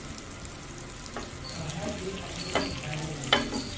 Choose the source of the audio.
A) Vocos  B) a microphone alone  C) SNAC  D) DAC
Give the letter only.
B